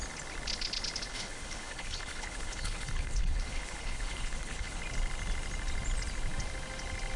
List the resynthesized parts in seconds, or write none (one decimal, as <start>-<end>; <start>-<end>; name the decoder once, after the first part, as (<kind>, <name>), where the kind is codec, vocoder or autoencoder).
1.1-4.8 (codec, HILCodec)